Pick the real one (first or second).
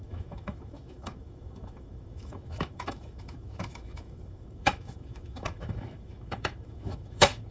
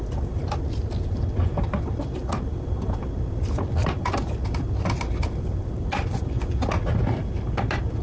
second